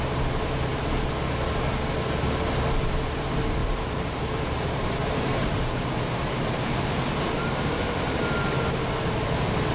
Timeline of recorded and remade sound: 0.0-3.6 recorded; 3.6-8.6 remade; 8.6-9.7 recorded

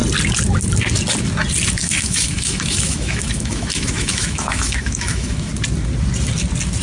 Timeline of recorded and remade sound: 0.0-1.8 recorded; 1.8-5.5 remade; 5.5-6.8 recorded